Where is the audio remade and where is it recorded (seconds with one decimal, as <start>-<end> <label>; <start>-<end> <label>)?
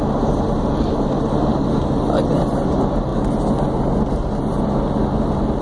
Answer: 0.0-3.1 remade; 3.1-5.6 recorded